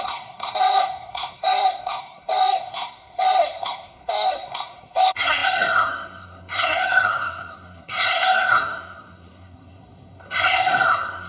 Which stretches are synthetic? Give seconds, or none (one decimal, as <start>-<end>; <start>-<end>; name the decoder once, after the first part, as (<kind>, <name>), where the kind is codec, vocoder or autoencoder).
0.0-11.3 (codec, SNAC)